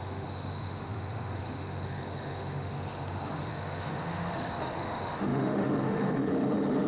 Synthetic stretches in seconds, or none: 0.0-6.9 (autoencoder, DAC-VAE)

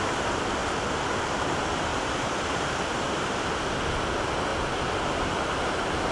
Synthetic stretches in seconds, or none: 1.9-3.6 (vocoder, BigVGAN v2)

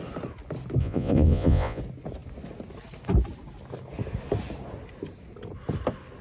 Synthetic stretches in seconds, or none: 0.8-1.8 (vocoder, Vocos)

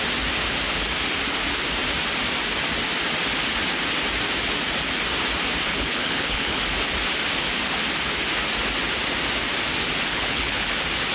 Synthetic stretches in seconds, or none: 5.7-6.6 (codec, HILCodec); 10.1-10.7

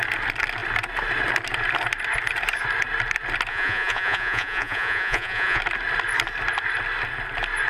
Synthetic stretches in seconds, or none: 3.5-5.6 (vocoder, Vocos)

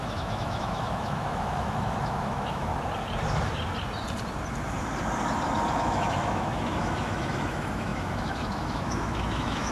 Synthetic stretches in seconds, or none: 0.0-2.7 (autoencoder, DAC-VAE); 5.7-9.7